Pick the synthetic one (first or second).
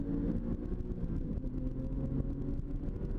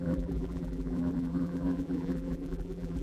second